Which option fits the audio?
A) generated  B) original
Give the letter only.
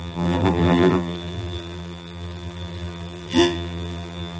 A